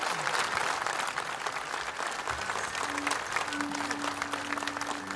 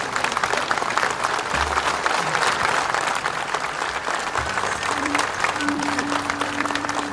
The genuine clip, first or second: first